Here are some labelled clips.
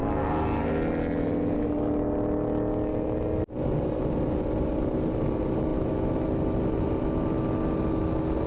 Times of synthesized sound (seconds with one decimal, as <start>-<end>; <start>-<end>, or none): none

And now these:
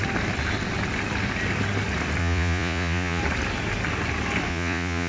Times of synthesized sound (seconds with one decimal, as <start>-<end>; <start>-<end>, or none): 2.2-3.2; 4.5-5.1

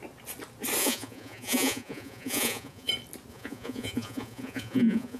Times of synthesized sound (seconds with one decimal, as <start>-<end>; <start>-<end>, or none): 0.8-2.9; 3.3-5.2

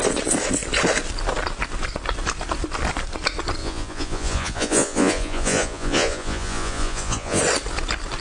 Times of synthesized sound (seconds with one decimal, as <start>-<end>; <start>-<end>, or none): 3.6-7.4

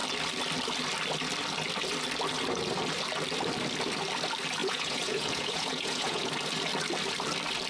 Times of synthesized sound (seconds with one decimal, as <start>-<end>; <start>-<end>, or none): 4.6-6.3

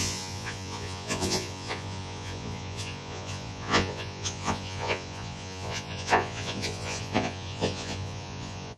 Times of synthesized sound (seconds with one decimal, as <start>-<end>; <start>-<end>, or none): 0.0-8.8

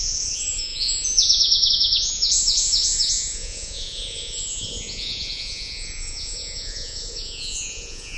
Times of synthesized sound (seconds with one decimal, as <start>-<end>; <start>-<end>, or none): 0.0-8.2